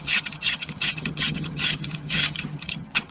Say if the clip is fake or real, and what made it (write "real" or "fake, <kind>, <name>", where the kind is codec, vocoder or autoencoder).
fake, vocoder, HiFi-GAN